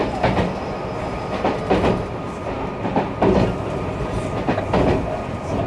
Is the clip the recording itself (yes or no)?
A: yes